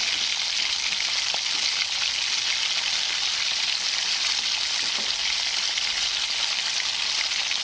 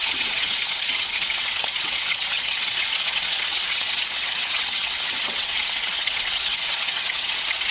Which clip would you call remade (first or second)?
second